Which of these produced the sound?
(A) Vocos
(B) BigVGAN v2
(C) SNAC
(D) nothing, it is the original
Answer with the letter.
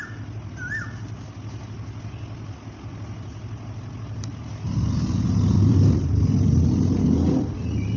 D